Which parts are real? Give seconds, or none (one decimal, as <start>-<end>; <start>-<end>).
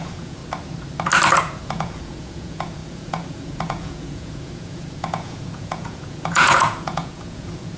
0.4-1.4